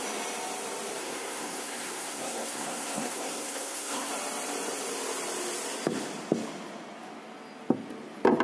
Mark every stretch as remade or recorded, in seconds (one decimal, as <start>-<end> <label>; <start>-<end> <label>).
0.0-1.0 recorded; 1.0-4.1 remade; 4.1-8.4 recorded